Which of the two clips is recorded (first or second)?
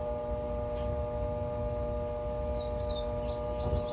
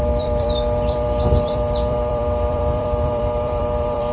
first